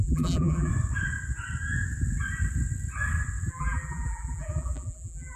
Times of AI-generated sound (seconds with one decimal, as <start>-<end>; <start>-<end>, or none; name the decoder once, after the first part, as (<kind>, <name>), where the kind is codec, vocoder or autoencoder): 0.0-0.7 (vocoder, BigVGAN v2); 3.5-5.4